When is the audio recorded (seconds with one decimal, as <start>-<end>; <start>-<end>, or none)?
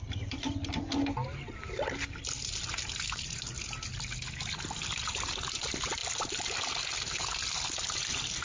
0.0-8.4